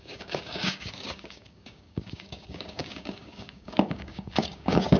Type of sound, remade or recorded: remade